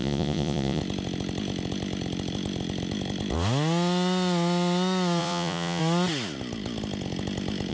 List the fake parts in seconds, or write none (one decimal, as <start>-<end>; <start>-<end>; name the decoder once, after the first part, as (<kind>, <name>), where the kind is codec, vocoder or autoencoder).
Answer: 0.0-0.8 (vocoder, Vocos); 5.2-5.8